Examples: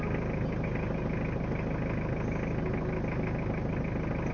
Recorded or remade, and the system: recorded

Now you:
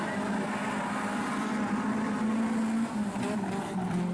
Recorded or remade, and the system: recorded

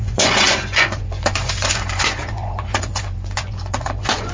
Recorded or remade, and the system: remade, vocoder, Vocos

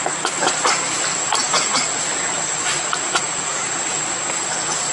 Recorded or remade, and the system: recorded